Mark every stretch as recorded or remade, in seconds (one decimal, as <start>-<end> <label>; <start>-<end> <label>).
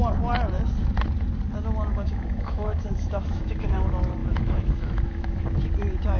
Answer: 0.0-1.9 recorded; 1.9-3.8 remade; 3.8-4.2 recorded; 4.2-5.4 remade; 5.4-6.2 recorded